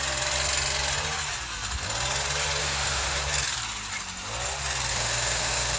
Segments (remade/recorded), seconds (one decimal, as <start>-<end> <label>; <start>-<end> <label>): 0.0-2.6 recorded; 2.6-3.2 remade; 3.2-4.9 recorded; 4.9-5.8 remade